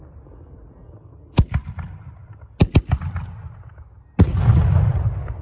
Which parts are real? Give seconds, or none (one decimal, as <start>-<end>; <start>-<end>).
0.0-5.4